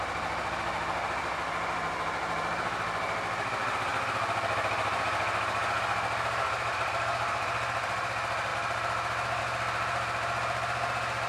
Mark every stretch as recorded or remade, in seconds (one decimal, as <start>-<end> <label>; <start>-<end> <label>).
0.0-11.3 recorded